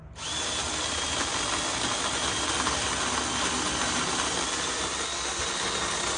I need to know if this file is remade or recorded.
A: recorded